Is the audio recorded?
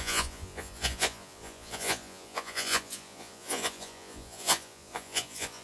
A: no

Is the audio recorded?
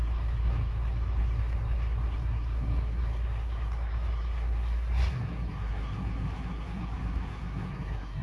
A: no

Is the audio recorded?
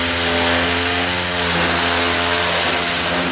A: yes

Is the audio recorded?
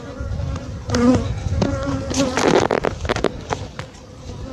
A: yes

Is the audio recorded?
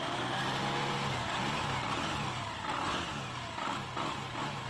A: yes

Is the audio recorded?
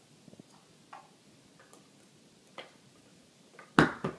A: yes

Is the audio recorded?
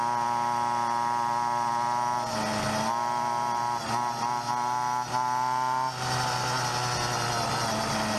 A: yes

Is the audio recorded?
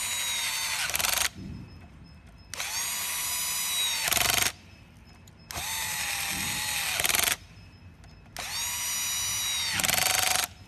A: yes